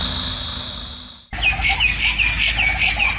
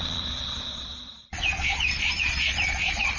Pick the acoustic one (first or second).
first